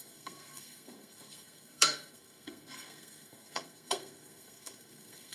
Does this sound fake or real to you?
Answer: fake